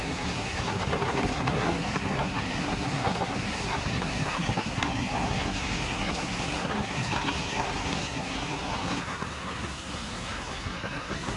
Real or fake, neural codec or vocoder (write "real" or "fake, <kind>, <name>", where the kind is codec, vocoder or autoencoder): fake, codec, SNAC